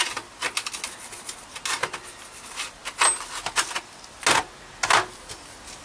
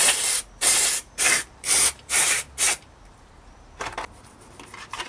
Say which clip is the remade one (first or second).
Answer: second